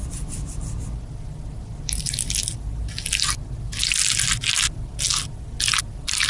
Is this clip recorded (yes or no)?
yes